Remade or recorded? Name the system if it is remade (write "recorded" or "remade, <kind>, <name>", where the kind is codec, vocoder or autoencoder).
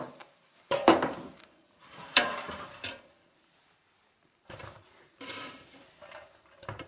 remade, vocoder, BigVGAN v2